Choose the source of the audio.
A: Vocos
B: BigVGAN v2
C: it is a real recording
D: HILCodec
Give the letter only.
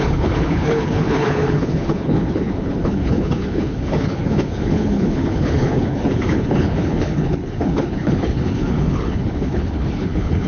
D